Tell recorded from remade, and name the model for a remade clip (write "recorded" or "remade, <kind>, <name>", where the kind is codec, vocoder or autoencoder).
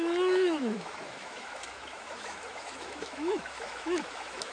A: remade, autoencoder, DAC-VAE